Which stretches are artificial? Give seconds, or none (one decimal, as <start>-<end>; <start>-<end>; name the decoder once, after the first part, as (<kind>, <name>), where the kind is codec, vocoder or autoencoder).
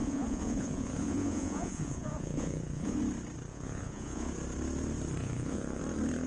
0.0-3.0 (vocoder, Vocos); 3.5-4.3; 5.2-5.8